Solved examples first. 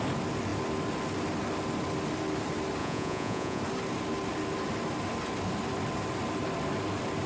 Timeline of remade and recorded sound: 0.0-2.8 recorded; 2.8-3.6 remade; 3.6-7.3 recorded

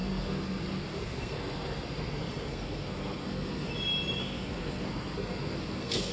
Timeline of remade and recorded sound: 0.0-3.7 remade; 3.7-4.2 recorded; 4.2-6.1 remade

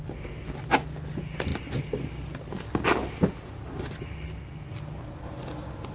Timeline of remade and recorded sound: 0.0-5.9 recorded

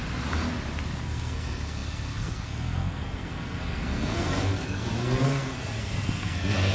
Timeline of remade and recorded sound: 0.0-1.0 recorded; 1.0-6.7 remade